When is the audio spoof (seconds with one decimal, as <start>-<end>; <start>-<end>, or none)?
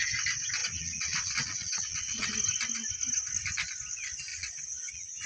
0.6-2.3; 4.3-5.3